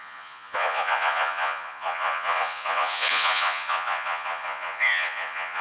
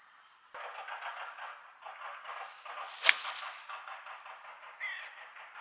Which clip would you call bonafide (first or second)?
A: second